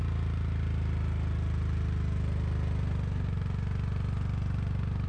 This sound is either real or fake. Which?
real